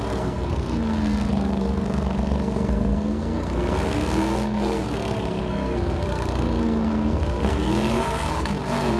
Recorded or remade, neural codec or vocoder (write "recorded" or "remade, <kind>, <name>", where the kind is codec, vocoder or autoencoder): remade, codec, SNAC